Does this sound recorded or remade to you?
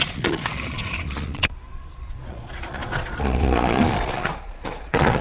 remade